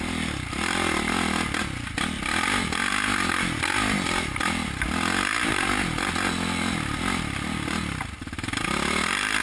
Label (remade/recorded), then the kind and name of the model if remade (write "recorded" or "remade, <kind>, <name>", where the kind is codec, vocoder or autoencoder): recorded